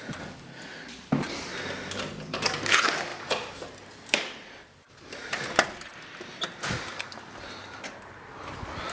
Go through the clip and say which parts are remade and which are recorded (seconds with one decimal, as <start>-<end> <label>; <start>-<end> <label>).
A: 0.0-3.1 recorded; 3.1-5.5 remade; 5.5-6.9 recorded; 6.9-7.9 remade; 7.9-8.9 recorded

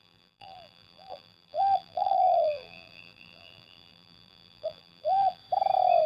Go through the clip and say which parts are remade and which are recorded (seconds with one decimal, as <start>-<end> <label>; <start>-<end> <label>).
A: 0.0-5.4 remade; 5.4-6.1 recorded